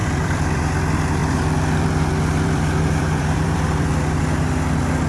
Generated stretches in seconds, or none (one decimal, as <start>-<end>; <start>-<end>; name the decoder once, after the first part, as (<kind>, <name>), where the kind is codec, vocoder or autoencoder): 0.0-0.6 (vocoder, BigVGAN v2); 1.2-4.2